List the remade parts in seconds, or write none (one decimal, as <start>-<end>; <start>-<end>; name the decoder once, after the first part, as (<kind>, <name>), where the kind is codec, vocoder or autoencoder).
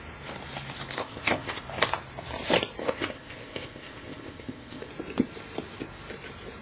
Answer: 1.0-1.6 (codec, ZipCodec); 2.8-4.9